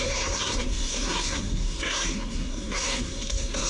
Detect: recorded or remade remade